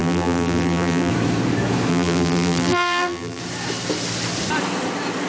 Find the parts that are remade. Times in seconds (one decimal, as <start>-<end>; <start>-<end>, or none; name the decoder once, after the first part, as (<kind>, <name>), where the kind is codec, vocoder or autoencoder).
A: 0.0-1.1 (vocoder, BigVGAN v2); 1.9-3.4